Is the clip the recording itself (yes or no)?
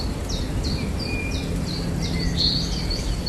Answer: yes